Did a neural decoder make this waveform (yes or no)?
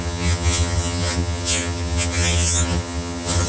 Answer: yes